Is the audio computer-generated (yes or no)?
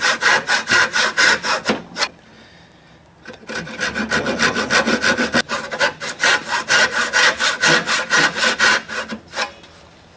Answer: no